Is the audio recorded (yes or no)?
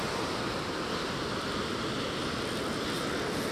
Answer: yes